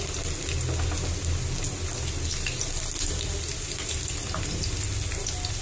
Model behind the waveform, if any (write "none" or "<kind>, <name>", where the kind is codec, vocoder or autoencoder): none